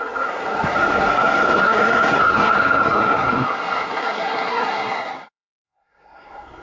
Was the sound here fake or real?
fake